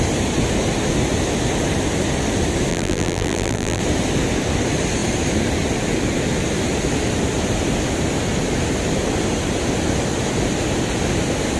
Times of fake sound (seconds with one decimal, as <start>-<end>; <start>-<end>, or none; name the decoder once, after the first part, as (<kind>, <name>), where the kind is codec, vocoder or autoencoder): 2.7-3.8 (vocoder, BigVGAN v2)

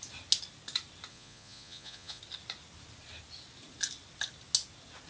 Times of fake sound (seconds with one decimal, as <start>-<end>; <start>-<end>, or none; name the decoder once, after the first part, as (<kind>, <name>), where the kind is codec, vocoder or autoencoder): 1.1-2.2 (vocoder, Vocos)

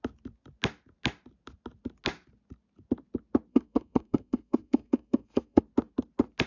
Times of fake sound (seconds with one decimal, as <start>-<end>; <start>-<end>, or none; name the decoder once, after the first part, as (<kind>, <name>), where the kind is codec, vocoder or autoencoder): 3.5-5.6 (codec, SNAC)

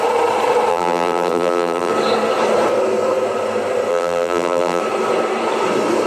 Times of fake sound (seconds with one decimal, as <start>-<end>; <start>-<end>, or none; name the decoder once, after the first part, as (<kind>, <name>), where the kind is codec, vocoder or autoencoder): 0.7-1.9 (vocoder, BigVGAN v2); 3.9-4.8

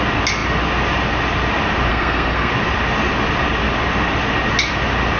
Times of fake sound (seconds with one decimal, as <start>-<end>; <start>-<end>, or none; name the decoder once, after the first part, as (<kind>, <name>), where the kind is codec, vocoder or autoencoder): 1.9-2.5 (codec, SNAC)